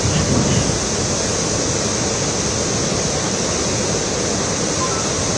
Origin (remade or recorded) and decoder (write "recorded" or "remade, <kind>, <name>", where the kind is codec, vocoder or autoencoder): recorded